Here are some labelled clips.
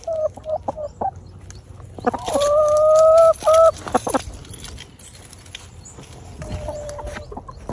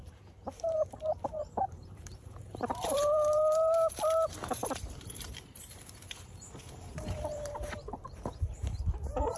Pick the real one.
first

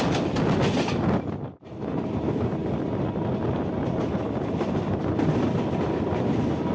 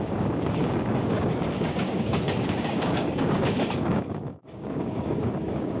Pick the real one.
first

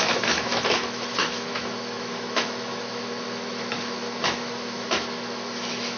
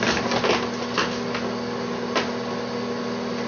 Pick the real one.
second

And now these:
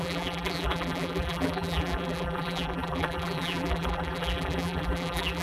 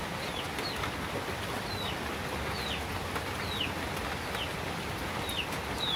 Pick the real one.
second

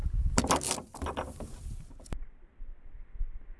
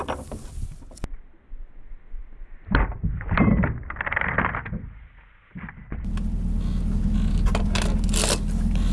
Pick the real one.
second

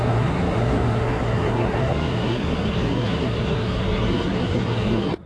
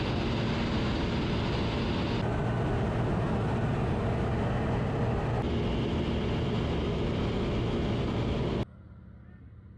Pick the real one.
second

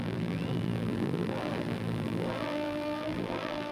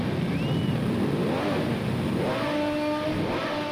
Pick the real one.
second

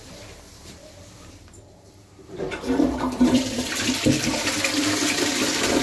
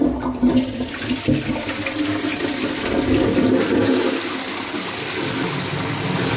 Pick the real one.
second